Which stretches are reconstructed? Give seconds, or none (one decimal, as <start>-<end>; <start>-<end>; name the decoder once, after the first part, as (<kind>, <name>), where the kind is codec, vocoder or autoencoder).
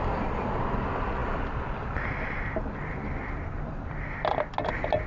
1.2-4.3 (vocoder, BigVGAN v2)